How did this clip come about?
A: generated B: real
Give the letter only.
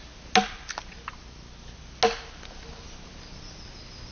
B